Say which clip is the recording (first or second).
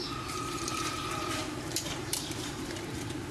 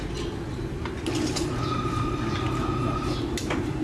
second